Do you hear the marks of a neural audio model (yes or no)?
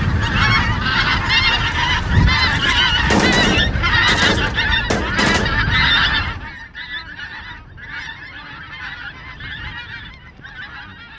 no